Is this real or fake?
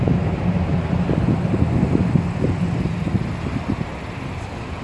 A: real